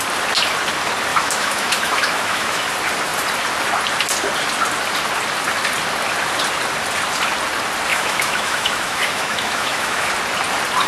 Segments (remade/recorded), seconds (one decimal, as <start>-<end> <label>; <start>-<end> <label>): 0.0-1.1 recorded; 1.1-2.7 remade; 2.7-7.9 recorded; 7.9-10.1 remade; 10.1-10.9 recorded